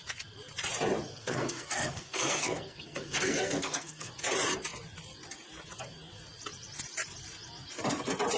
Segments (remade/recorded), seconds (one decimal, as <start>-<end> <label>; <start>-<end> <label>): 0.0-1.1 recorded; 1.1-4.1 remade; 4.1-8.4 recorded